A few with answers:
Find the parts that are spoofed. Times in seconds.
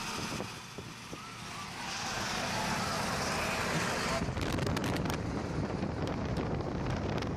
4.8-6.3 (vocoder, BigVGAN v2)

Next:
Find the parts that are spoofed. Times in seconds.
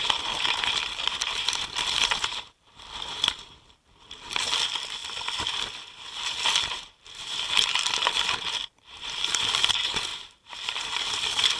0.0-5.0 (vocoder, BigVGAN v2); 6.2-11.6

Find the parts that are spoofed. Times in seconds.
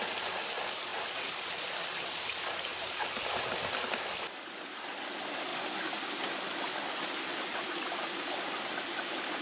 none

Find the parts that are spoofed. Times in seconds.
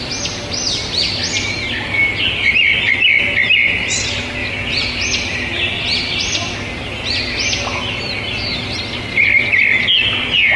4.4-5.0 (vocoder, BigVGAN v2)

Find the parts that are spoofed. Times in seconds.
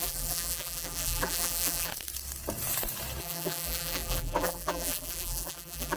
0.0-1.9 (vocoder, BigVGAN v2); 3.2-6.0